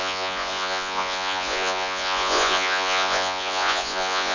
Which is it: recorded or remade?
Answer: remade